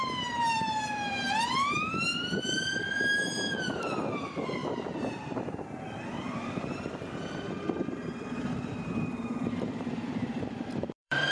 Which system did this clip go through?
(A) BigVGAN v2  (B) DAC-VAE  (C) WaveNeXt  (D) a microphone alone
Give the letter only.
A